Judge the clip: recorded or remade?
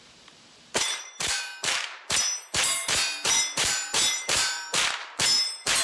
remade